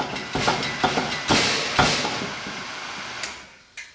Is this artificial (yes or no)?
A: no